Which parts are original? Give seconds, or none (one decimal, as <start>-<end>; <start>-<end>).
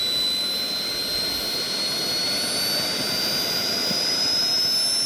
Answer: 0.0-5.1